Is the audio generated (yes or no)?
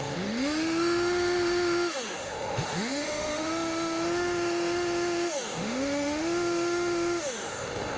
yes